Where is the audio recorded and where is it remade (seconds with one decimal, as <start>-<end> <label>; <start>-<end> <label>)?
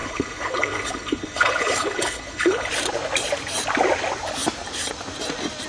0.0-2.7 remade; 2.7-5.7 recorded